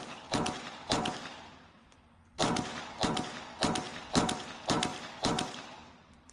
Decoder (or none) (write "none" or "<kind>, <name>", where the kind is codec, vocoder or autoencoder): vocoder, BigVGAN v2